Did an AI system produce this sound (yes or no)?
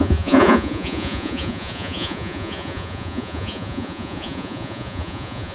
yes